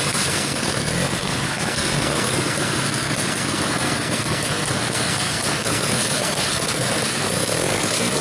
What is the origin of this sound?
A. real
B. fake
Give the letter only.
B